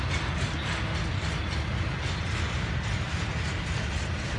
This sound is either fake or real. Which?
real